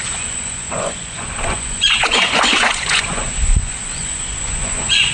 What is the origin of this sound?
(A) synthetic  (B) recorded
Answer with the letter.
A